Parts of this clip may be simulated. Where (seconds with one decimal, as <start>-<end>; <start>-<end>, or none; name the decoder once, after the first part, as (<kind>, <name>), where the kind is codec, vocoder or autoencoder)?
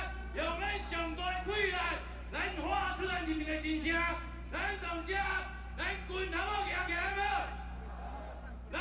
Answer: 2.7-3.4 (vocoder, BigVGAN v2)